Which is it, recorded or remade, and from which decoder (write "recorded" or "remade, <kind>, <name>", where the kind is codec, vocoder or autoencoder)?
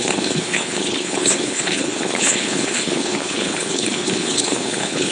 remade, codec, HILCodec